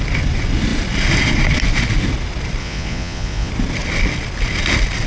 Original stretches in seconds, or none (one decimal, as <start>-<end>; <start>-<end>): 0.0-2.6; 3.5-5.1